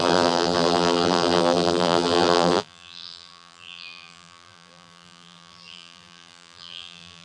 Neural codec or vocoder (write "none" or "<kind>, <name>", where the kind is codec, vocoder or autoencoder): vocoder, BigVGAN v2